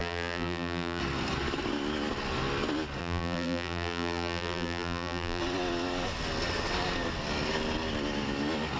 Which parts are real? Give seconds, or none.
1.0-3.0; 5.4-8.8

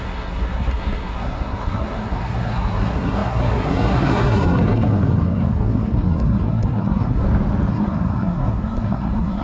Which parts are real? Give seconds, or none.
7.2-7.7

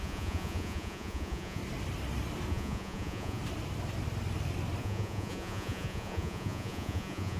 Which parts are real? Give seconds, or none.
1.6-2.5; 3.4-4.8

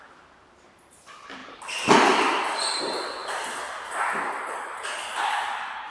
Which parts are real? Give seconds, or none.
0.0-5.9

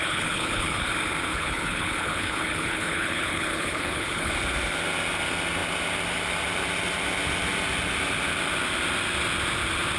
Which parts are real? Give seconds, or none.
0.9-1.3; 4.3-10.0

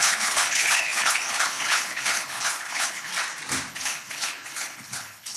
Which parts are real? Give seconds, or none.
3.1-3.7

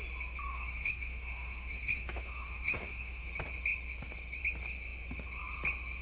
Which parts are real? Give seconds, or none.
0.0-0.4; 3.3-6.0

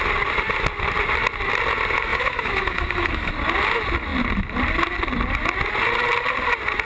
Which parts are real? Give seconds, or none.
0.0-2.1; 3.3-6.8